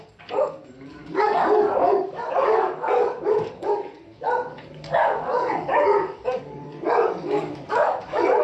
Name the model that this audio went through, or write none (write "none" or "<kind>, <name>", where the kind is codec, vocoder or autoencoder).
codec, DAC